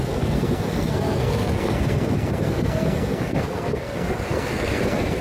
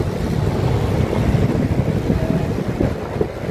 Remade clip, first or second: first